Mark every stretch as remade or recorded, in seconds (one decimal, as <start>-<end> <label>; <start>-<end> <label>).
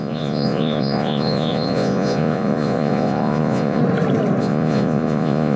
0.0-3.8 remade; 3.8-4.4 recorded; 4.4-5.6 remade